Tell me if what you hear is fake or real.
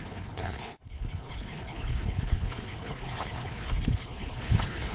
fake